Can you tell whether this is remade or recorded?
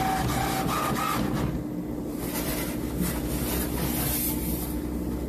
recorded